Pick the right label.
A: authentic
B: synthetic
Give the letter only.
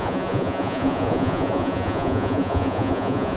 B